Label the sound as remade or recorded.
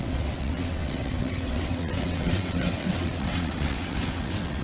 remade